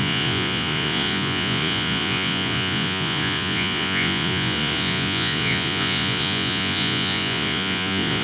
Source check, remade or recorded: remade